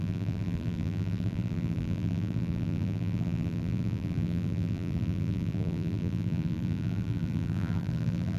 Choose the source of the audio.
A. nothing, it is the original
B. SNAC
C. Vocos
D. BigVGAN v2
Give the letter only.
D